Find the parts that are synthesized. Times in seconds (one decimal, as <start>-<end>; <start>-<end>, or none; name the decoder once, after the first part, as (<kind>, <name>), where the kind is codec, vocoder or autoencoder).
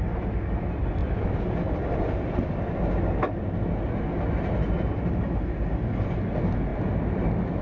none